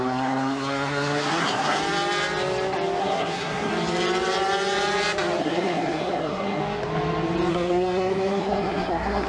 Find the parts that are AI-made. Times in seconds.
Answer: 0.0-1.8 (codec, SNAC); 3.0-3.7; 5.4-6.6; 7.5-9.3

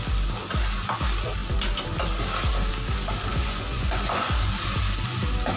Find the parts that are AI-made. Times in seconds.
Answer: 3.3-4.5 (vocoder, Vocos)

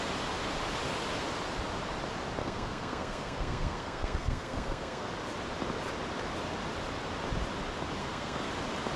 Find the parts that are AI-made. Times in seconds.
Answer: 2.4-5.1 (codec, SNAC); 8.0-8.5

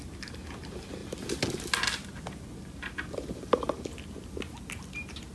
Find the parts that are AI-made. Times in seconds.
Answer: none

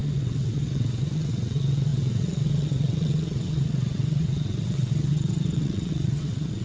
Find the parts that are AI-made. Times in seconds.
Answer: 0.0-6.6 (vocoder, WaveNeXt)

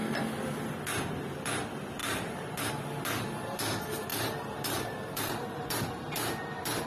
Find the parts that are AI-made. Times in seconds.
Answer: 2.0-2.7 (vocoder, BigVGAN v2); 4.1-5.8

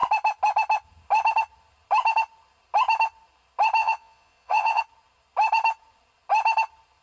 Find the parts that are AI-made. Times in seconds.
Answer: 3.8-4.8 (vocoder, Vocos)

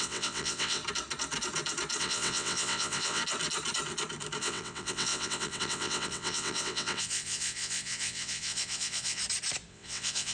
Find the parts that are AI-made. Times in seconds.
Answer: 0.0-0.8 (vocoder, WaveNeXt); 2.0-3.2; 4.4-9.2; 9.7-10.3